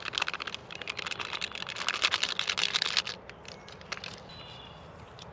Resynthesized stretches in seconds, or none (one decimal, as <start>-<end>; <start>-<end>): none